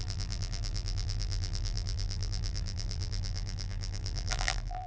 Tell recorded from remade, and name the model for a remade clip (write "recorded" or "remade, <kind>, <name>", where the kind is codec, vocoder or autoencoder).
remade, vocoder, BigVGAN v2